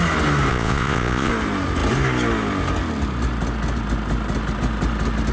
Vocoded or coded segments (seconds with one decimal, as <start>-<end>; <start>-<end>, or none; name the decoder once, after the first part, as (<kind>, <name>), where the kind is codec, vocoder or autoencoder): 0.5-1.3 (vocoder, Vocos)